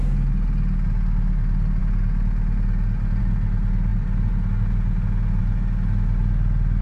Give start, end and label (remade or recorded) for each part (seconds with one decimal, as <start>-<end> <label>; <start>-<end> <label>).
0.0-6.8 recorded